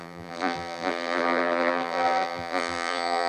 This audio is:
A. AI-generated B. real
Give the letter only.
A